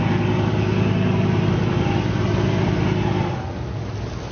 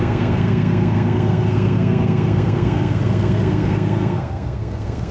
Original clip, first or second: first